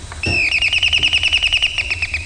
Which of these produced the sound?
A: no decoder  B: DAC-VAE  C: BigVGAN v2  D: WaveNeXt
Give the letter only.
A